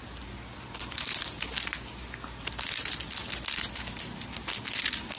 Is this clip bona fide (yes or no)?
yes